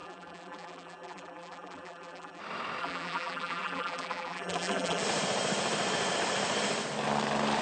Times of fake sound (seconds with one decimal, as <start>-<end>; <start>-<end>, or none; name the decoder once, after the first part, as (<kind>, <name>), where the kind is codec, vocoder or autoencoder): 0.0-2.4 (vocoder, BigVGAN v2); 2.8-5.0